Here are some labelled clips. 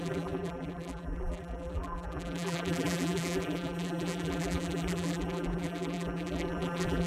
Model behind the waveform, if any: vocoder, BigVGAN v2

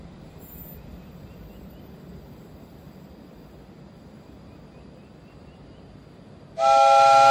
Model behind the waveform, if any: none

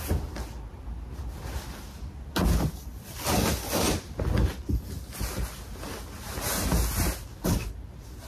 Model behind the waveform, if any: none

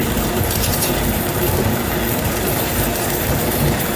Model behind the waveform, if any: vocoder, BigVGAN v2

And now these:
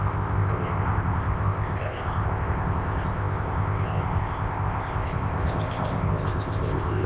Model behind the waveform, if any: codec, ZipCodec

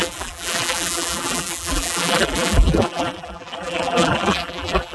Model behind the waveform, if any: vocoder, BigVGAN v2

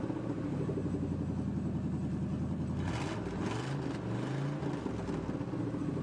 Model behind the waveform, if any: none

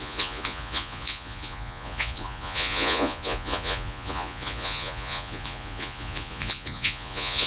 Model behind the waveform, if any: vocoder, Vocos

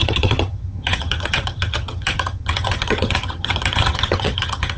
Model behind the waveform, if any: vocoder, HiFi-GAN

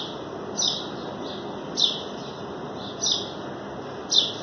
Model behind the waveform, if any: none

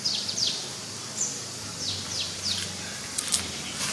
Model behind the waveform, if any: none